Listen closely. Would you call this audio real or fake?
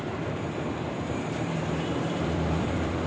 fake